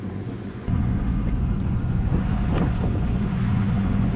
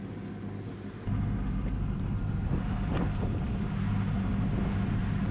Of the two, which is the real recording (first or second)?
second